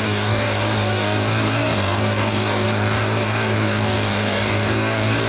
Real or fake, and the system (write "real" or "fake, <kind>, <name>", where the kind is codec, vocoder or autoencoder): fake, codec, DAC